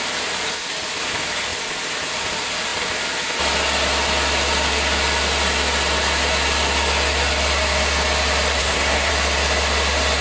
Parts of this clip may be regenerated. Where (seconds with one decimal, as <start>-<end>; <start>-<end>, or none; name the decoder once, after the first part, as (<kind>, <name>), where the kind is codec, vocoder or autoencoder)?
8.6-9.1 (codec, SNAC)